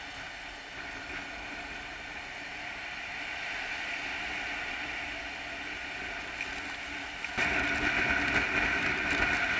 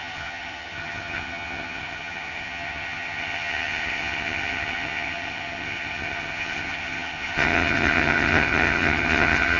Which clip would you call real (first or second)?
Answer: first